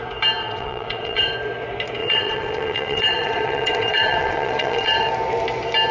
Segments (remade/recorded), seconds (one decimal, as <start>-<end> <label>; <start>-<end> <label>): 0.0-0.4 recorded; 0.4-1.3 remade; 1.3-2.0 recorded; 2.0-5.1 remade; 5.1-5.9 recorded